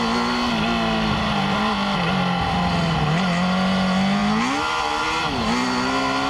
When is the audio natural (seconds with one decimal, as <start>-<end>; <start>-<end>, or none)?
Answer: 0.0-6.3